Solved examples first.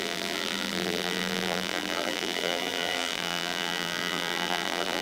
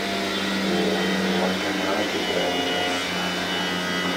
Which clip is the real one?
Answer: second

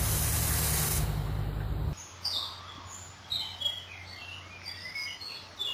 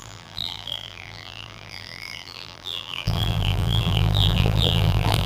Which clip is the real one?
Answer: first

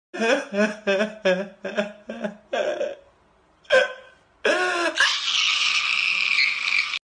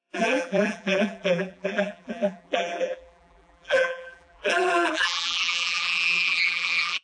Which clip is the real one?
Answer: first